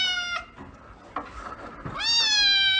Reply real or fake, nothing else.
real